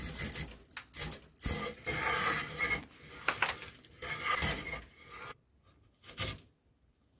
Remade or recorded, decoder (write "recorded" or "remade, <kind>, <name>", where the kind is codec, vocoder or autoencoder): recorded